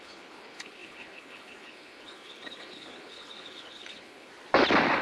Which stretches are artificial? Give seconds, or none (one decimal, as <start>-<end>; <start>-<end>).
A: 0.0-4.3